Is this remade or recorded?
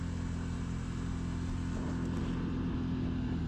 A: recorded